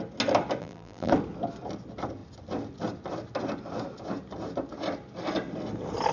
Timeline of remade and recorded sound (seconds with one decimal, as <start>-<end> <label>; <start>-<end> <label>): 0.0-0.6 recorded; 0.6-1.1 remade; 1.1-6.1 recorded